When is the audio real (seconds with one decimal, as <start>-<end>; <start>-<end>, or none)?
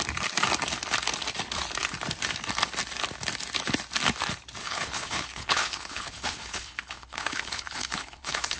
0.0-4.6